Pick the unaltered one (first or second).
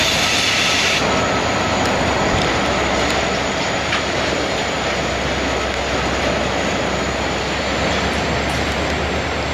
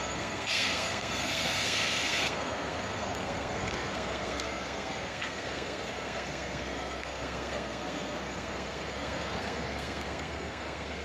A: first